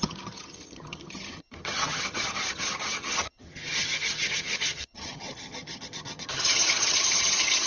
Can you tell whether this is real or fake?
fake